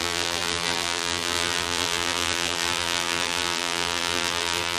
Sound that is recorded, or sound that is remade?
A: remade